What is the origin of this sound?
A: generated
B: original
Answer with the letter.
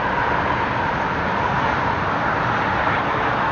B